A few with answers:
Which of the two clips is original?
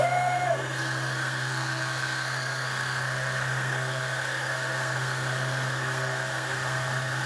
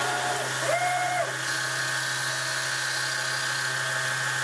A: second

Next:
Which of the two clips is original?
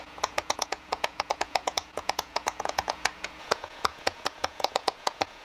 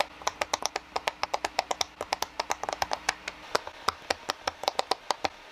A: second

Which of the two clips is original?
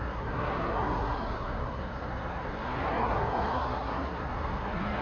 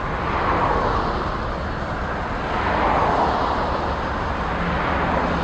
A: second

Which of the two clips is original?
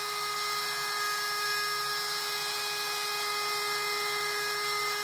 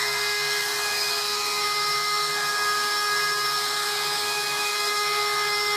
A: first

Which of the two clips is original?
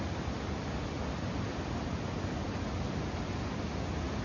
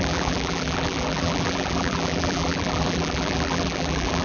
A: first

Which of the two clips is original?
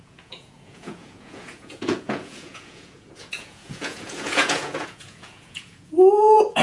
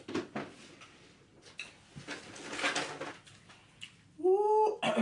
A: second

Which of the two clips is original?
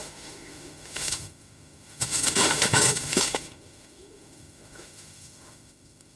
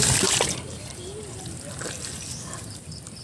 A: second